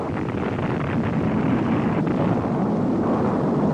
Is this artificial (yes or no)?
yes